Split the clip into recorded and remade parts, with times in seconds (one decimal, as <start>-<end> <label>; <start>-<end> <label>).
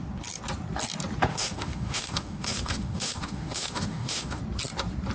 0.0-1.3 recorded; 1.3-4.4 remade; 4.4-5.1 recorded